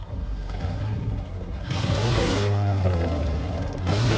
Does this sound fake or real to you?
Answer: fake